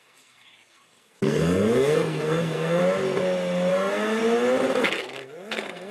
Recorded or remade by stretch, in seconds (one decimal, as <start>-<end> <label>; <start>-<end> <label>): 0.0-2.8 remade; 2.8-3.7 recorded; 3.7-4.2 remade; 4.2-4.7 recorded; 4.7-5.9 remade